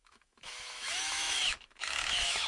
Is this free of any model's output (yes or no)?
no